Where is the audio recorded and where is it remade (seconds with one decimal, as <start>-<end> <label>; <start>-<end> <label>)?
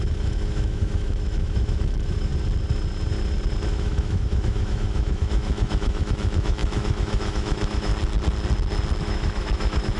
0.0-2.3 remade; 2.3-3.7 recorded; 3.7-7.9 remade; 7.9-9.0 recorded; 9.0-10.0 remade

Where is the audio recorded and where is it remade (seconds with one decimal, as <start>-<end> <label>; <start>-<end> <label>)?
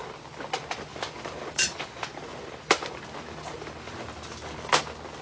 0.0-0.9 recorded; 0.9-4.0 remade; 4.0-5.2 recorded